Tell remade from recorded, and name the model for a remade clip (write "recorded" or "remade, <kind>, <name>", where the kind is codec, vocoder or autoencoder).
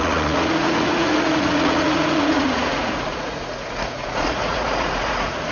remade, vocoder, Vocos